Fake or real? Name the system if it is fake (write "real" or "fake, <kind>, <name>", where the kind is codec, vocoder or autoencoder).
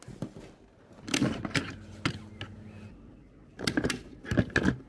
real